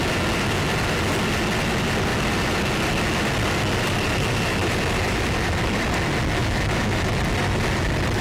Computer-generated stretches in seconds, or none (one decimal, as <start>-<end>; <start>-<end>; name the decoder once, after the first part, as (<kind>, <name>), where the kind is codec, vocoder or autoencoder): 6.4-7.1 (autoencoder, DAC-VAE)